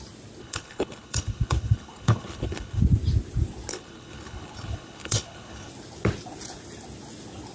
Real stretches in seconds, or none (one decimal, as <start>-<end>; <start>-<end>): 0.0-0.4; 2.8-3.7; 5.7-7.5

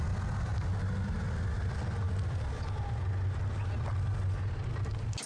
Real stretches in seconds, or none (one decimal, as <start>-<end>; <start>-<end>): 0.0-5.3

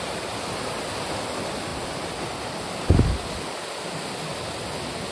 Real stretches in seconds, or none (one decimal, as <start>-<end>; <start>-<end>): 0.0-5.1

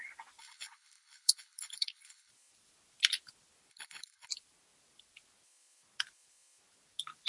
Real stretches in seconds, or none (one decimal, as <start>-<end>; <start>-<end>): 0.0-0.4; 2.3-3.7; 4.3-7.3